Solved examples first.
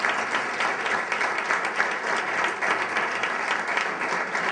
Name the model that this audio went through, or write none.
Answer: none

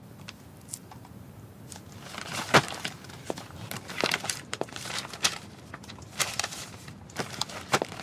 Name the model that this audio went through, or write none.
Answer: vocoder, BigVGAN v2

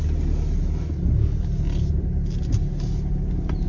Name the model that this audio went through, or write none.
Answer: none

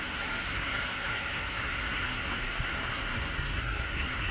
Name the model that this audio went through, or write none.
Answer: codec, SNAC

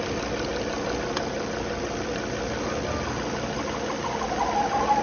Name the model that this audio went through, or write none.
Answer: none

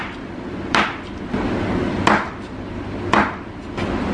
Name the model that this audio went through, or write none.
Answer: none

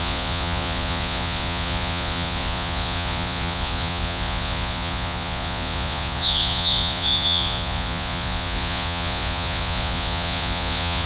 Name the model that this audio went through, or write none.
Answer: vocoder, Vocos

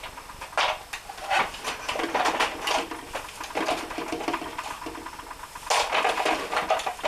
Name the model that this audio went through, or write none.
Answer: none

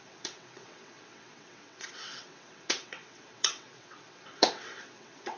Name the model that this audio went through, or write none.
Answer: vocoder, WaveNeXt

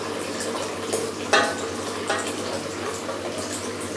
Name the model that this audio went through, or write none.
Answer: none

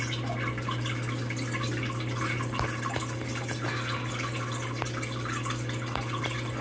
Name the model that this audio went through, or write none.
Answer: none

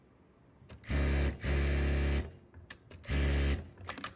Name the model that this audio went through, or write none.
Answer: none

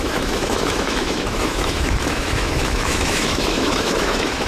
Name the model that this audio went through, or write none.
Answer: autoencoder, DAC-VAE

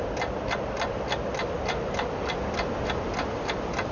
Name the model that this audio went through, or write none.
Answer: none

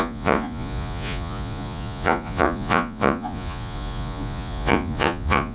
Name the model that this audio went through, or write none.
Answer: vocoder, Vocos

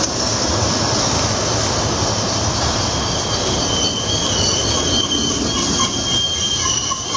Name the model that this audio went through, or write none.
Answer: none